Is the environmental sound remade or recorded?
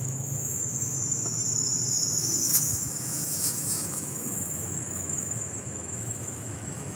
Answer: remade